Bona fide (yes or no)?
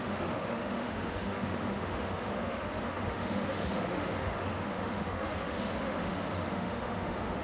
no